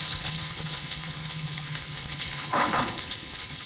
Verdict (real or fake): fake